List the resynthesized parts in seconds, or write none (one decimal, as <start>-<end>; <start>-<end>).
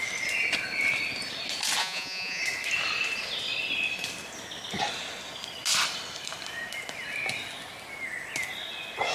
1.8-2.4